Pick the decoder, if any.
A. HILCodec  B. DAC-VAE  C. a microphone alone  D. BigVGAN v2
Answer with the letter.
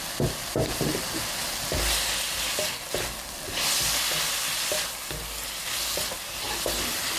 C